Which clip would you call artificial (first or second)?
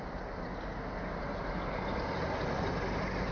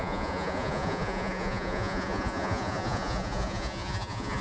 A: second